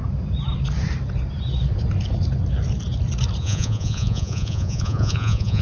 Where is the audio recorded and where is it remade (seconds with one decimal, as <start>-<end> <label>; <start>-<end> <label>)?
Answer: 0.0-3.4 recorded; 3.4-5.6 remade